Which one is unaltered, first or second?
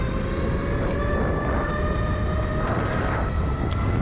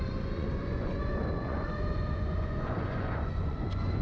first